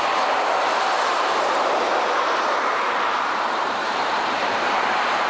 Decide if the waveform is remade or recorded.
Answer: remade